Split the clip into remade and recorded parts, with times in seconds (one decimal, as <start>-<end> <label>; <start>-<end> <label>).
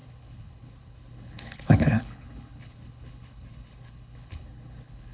0.0-5.1 remade